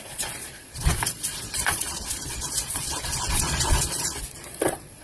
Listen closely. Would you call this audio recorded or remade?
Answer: remade